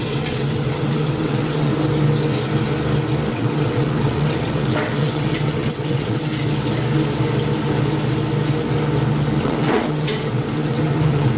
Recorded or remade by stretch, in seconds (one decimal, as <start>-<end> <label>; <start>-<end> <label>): 0.0-1.7 remade; 1.7-3.3 recorded; 3.3-6.3 remade; 6.3-9.4 recorded; 9.4-11.4 remade